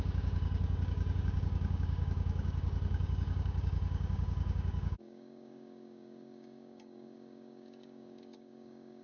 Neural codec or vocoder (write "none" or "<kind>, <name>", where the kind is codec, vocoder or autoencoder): codec, DAC